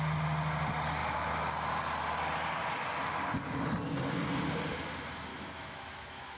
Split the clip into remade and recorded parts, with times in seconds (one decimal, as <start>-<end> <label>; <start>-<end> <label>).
0.0-5.3 recorded; 5.3-6.4 remade